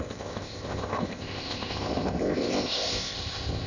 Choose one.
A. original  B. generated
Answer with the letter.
B